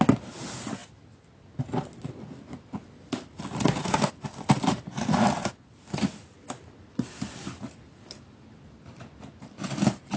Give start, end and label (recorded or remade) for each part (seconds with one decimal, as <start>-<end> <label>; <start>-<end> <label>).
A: 0.0-10.2 recorded